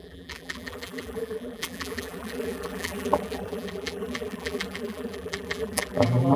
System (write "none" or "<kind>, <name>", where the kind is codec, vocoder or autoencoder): vocoder, BigVGAN v2